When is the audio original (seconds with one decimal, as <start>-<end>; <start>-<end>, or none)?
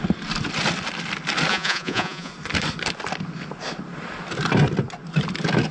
0.0-1.5; 2.3-5.7